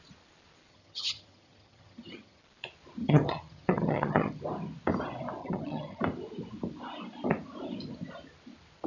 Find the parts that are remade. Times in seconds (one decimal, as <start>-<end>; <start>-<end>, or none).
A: 0.7-2.4; 3.0-4.4; 5.4-6.0